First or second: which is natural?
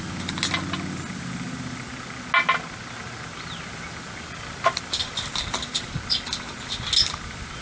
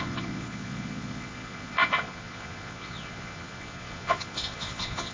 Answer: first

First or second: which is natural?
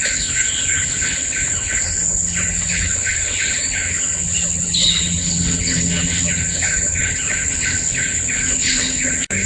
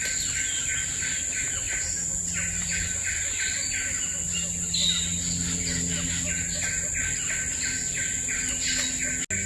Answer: second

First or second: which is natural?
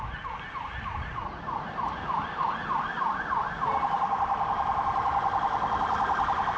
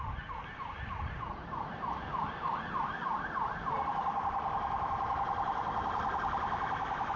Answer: first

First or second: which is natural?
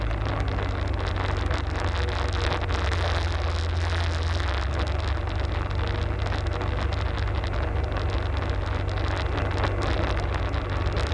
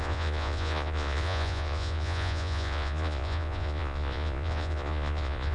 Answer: first